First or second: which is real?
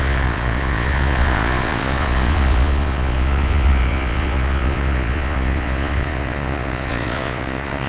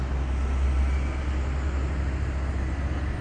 second